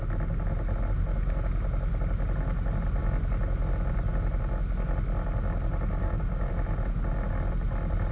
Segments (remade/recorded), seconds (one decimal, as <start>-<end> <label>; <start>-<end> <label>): 0.0-6.0 recorded; 6.0-6.5 remade; 6.5-8.1 recorded